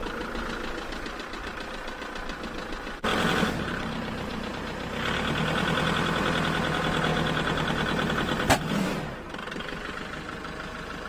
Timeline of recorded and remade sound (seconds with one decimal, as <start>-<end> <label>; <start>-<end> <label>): 0.0-3.1 recorded; 3.1-4.5 remade; 4.5-9.4 recorded; 9.4-9.9 remade; 9.9-11.1 recorded